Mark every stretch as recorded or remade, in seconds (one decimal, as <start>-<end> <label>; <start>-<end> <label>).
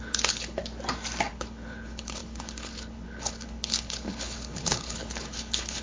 0.0-0.6 remade; 0.6-1.3 recorded; 1.3-5.8 remade